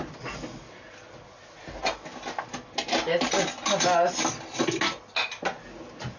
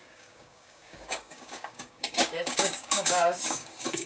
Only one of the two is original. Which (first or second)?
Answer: first